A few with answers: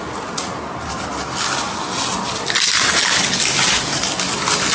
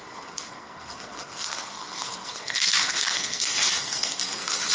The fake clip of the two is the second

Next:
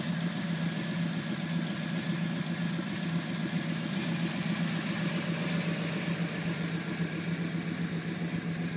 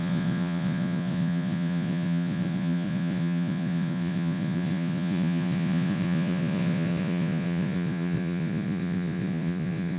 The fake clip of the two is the second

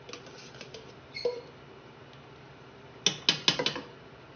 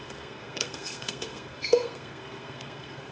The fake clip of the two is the second